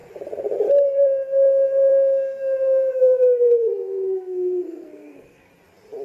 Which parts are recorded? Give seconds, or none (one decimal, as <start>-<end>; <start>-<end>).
0.0-1.9; 5.5-6.0